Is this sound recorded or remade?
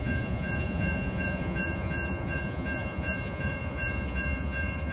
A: remade